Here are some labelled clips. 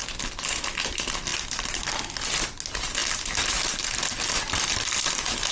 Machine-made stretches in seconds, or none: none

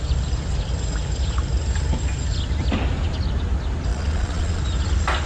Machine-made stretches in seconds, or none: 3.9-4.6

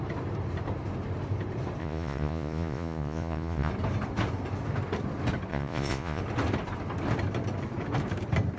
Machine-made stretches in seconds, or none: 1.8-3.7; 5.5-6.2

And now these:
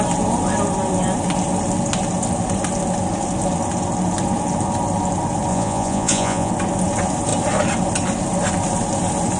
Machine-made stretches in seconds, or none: 5.5-6.5

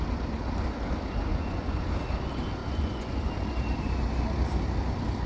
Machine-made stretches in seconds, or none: 1.3-1.8; 2.6-3.3

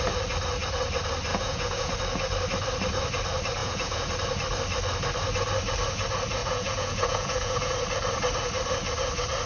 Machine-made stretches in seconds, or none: 1.3-1.9; 3.6-4.1; 6.4-7.7

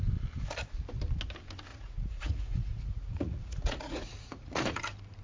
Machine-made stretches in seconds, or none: 1.7-4.8